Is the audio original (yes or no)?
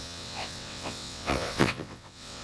no